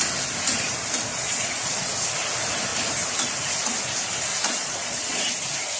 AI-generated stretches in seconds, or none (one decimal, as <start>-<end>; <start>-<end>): 1.1-1.9; 4.3-5.3